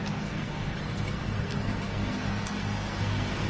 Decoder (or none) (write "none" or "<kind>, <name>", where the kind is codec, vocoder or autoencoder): codec, SNAC